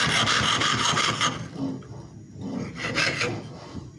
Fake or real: real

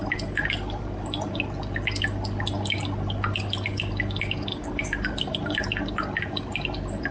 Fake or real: real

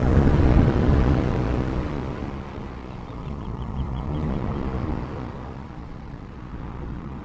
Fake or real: fake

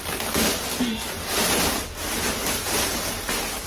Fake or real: real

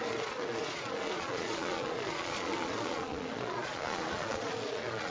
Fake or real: fake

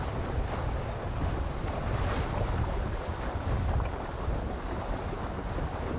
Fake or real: real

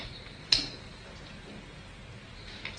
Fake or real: real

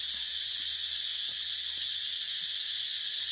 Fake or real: real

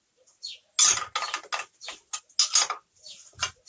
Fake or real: real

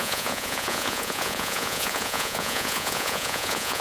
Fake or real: fake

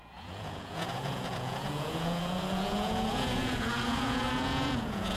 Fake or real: fake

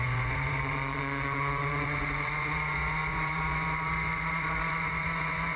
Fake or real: fake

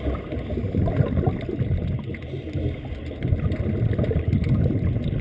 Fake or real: real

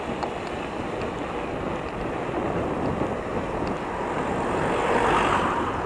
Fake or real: real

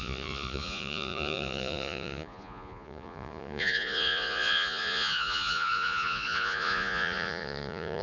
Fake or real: fake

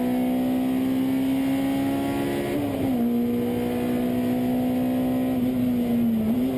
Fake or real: real